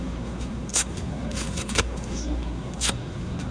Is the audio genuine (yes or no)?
no